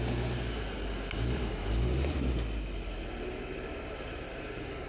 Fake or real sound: real